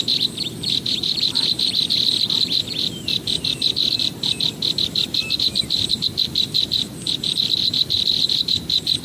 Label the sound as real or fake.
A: fake